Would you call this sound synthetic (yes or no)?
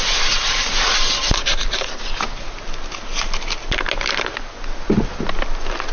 no